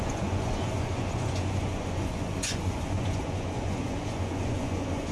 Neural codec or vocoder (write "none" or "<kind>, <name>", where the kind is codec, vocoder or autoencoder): vocoder, Vocos